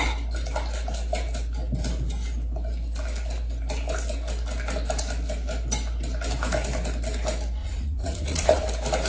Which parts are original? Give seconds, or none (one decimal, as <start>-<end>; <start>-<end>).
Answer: 0.0-7.6; 8.7-9.1